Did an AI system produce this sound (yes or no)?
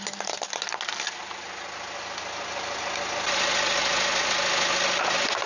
no